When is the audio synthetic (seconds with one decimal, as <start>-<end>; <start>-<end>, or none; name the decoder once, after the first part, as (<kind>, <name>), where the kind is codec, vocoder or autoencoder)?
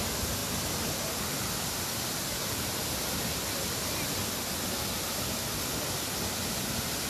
none